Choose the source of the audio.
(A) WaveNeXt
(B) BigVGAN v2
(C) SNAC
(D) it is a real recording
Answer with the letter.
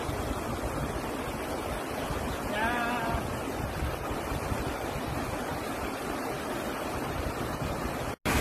D